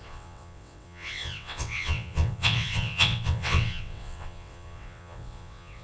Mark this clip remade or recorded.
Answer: remade